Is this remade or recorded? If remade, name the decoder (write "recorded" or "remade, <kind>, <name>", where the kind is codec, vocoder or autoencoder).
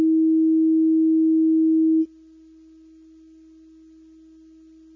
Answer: recorded